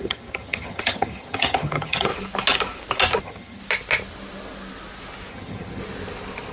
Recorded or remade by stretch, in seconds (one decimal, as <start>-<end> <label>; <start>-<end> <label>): 0.0-2.1 remade; 2.1-3.2 recorded; 3.2-3.6 remade; 3.6-5.3 recorded; 5.3-5.8 remade; 5.8-6.5 recorded